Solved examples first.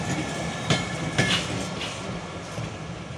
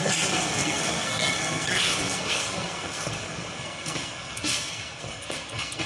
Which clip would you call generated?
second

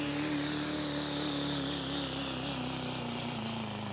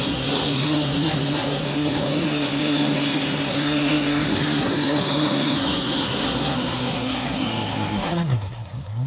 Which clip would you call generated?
second